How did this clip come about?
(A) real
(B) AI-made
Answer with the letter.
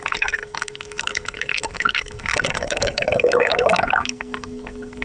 B